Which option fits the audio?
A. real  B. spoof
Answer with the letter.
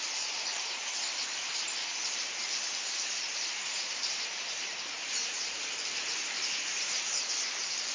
B